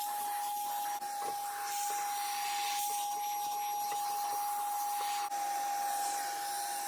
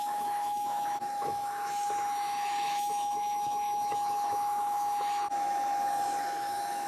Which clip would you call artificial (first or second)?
second